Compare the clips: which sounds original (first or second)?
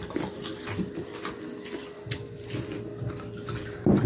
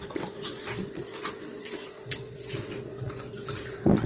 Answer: first